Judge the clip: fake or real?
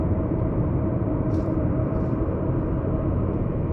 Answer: fake